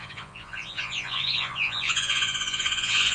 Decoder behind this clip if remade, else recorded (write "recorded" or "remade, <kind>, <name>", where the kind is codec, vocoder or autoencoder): remade, vocoder, Vocos